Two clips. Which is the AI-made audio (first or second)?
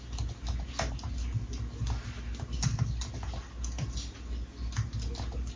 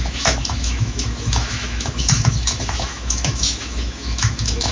second